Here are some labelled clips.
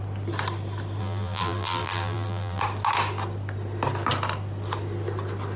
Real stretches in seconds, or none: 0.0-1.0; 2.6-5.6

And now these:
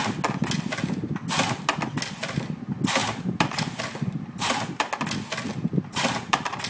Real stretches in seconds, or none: 0.0-3.0; 3.8-5.5

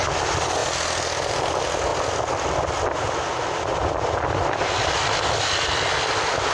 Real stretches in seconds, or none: 0.0-6.5

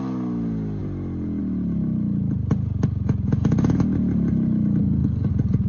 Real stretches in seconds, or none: 0.0-4.8; 5.3-5.7

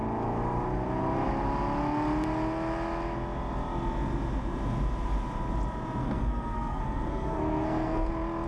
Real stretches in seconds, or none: 0.0-6.0; 8.1-8.5

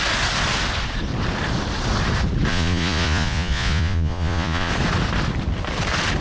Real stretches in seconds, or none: 0.0-2.5; 4.7-6.2

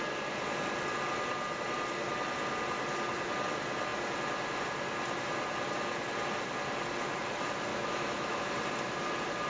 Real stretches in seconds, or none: 0.0-7.7; 8.4-9.5

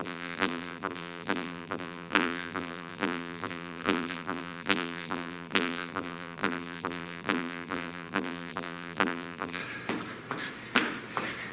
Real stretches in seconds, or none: 9.6-11.5